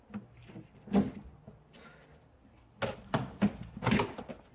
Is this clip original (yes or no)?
yes